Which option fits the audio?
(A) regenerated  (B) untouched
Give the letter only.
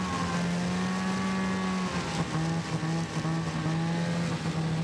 B